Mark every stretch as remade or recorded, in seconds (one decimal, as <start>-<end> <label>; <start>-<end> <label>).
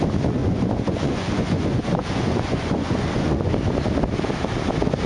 0.0-0.4 recorded; 0.4-3.5 remade; 3.5-5.1 recorded